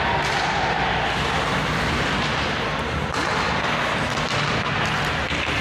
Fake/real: real